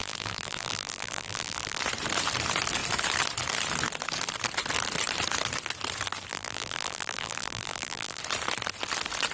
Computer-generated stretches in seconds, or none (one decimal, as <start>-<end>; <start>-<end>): 0.0-1.8; 6.3-8.2